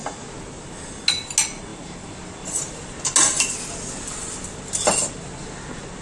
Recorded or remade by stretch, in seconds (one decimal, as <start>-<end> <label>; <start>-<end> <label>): 0.0-6.0 recorded